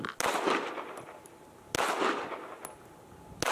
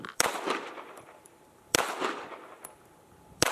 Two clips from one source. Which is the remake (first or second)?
second